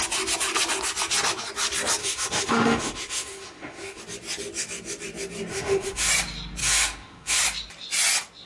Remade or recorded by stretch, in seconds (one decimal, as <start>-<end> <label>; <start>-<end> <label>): 0.0-2.0 recorded; 2.0-4.0 remade; 4.0-5.5 recorded; 5.5-6.1 remade; 6.1-6.6 recorded; 6.6-7.4 remade; 7.4-8.5 recorded